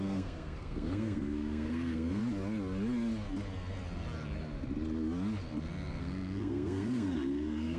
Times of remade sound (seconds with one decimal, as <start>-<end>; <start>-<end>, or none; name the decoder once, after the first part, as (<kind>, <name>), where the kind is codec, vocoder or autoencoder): 0.0-2.2 (codec, SNAC); 6.0-7.8